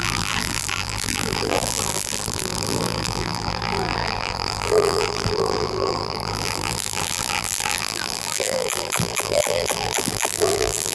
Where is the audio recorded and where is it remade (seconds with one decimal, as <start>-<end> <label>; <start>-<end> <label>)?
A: 0.0-10.9 remade